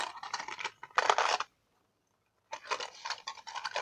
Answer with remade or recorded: recorded